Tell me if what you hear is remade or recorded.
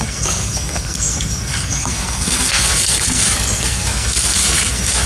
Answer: remade